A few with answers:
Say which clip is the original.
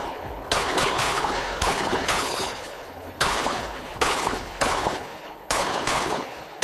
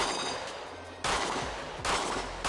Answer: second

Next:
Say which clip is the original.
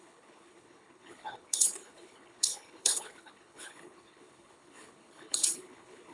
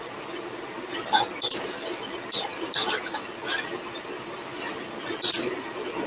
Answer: second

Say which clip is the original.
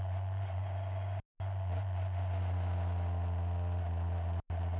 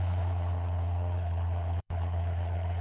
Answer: first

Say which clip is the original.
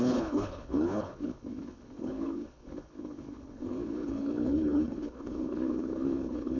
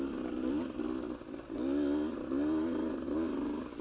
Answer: second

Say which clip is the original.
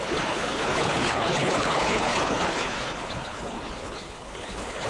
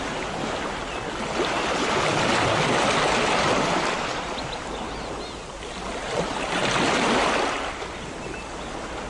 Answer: second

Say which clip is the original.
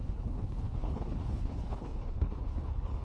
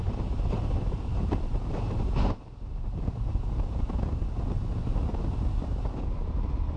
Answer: second